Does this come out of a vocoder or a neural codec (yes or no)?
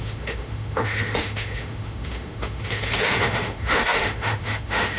yes